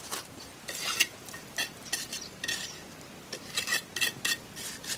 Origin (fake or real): real